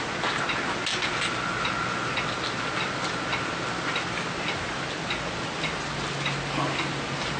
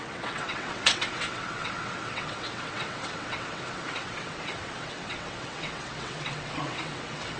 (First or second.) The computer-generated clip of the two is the second